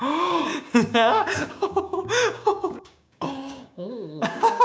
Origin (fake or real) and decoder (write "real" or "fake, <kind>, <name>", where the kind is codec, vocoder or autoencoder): fake, codec, DAC